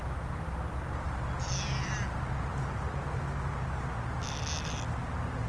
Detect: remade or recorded recorded